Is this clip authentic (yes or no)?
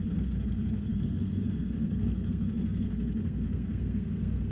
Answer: no